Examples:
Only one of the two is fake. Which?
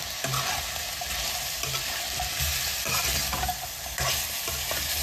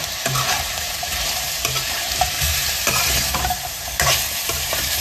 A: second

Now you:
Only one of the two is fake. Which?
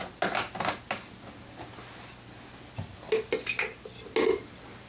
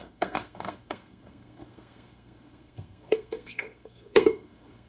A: second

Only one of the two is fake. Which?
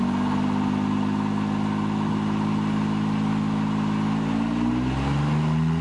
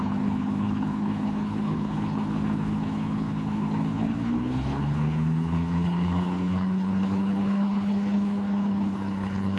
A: second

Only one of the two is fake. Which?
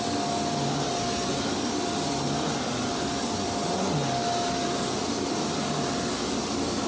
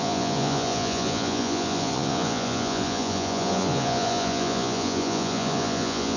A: second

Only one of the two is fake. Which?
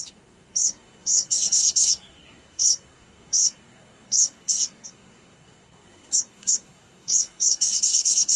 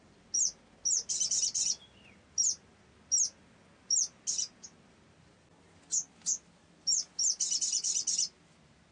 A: first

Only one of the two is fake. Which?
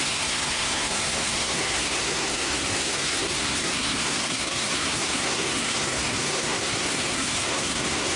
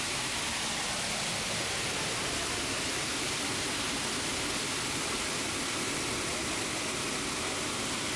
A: first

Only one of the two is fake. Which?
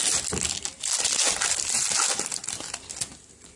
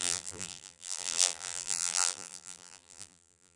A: second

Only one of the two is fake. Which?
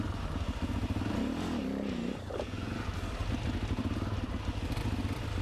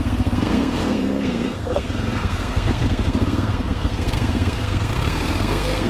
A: second